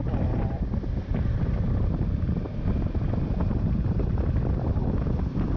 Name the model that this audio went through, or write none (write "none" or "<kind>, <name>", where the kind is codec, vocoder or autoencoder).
none